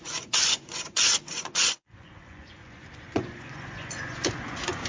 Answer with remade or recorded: remade